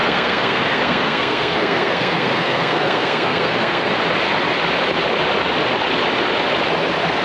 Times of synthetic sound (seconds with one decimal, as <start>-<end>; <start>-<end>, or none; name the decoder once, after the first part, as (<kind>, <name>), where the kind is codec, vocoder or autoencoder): 0.0-3.9 (codec, SNAC)